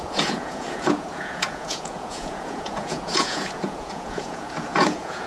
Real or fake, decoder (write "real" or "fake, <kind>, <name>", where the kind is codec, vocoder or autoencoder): fake, vocoder, Vocos